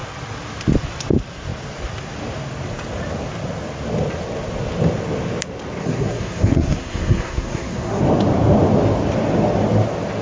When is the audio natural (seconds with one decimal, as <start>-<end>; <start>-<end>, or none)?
0.0-5.8; 8.0-10.2